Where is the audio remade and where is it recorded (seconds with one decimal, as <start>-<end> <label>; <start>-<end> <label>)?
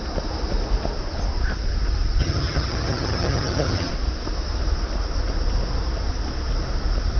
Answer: 0.0-2.2 recorded; 2.2-3.9 remade; 3.9-7.2 recorded